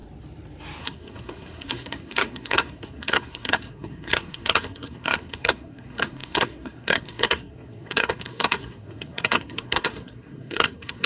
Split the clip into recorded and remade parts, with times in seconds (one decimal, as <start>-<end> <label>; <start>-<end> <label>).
0.0-0.8 recorded; 0.8-11.1 remade

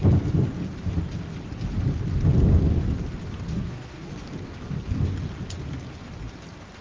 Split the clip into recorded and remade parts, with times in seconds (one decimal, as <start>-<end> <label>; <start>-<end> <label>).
0.0-3.5 recorded; 3.5-4.1 remade; 4.1-6.8 recorded

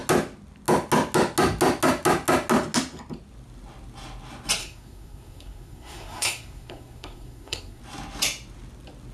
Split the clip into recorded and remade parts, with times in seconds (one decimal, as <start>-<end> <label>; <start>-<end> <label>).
0.0-4.6 recorded; 4.6-7.8 remade; 7.8-9.1 recorded

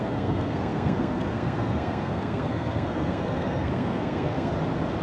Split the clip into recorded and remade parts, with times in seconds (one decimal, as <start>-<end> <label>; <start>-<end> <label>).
0.0-4.5 remade; 4.5-5.0 recorded

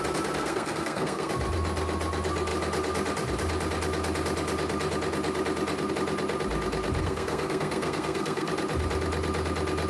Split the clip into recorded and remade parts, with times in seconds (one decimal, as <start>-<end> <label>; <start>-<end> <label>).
0.0-0.4 recorded; 0.4-1.3 remade; 1.3-7.0 recorded; 7.0-8.5 remade; 8.5-9.9 recorded

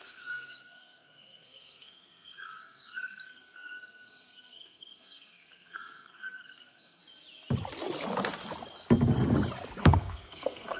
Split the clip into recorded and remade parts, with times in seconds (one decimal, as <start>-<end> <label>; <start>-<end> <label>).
0.0-7.0 remade; 7.0-9.8 recorded; 9.8-10.8 remade

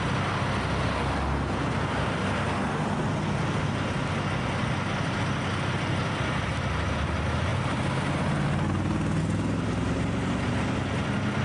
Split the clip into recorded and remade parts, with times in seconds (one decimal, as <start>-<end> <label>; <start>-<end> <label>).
0.0-11.4 recorded